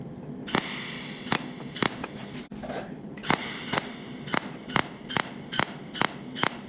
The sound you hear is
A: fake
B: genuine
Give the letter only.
A